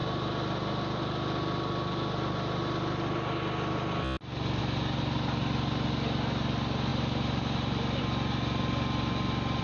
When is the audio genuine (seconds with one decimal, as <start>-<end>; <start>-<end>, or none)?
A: 0.0-9.6